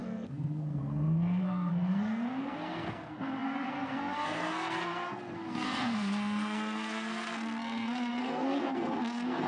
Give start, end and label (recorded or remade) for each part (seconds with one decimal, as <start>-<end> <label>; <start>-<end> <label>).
0.0-9.5 remade